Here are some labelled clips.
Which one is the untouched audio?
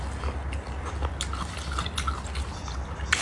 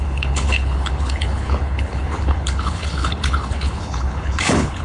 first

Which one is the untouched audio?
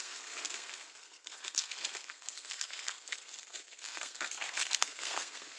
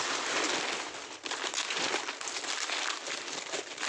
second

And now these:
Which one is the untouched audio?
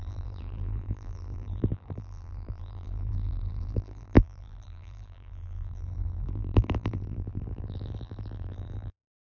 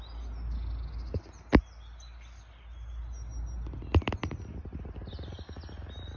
second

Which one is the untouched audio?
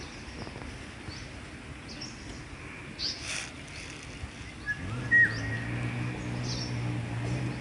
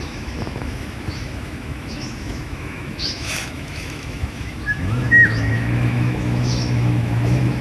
first